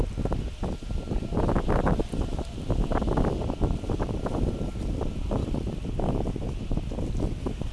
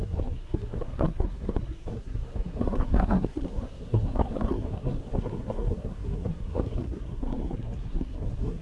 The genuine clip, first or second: first